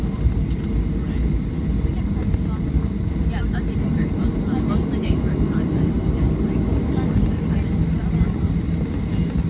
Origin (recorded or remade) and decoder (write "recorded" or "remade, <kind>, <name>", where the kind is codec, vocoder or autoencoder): recorded